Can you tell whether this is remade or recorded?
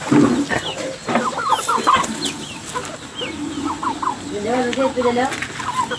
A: recorded